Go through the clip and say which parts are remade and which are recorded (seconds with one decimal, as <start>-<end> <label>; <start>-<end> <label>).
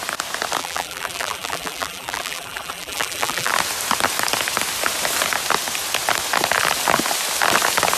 0.0-0.6 recorded; 0.6-3.5 remade; 3.5-8.0 recorded